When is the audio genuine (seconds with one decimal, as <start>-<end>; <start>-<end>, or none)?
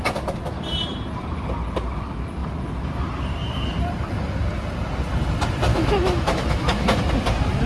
0.0-5.7; 7.0-7.7